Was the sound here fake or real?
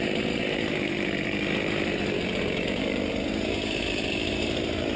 fake